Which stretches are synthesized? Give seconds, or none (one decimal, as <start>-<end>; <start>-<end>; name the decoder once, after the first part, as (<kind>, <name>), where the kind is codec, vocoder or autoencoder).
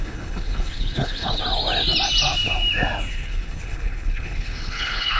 0.0-1.4 (codec, HILCodec); 3.1-5.2